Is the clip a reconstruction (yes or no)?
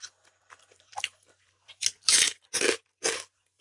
no